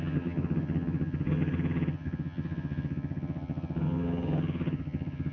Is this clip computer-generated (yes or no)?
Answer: yes